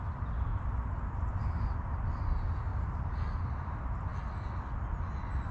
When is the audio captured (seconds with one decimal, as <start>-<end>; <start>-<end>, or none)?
0.0-0.5; 2.1-2.7; 3.5-5.5